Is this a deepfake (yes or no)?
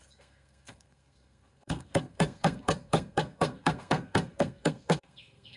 yes